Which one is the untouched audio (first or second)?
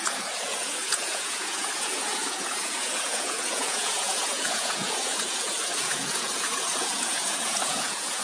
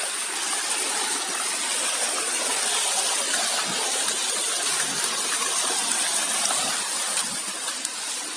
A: second